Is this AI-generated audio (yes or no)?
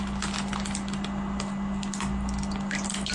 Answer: no